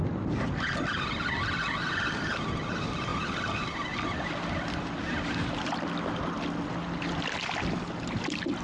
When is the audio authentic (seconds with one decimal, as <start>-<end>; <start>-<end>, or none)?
0.0-8.6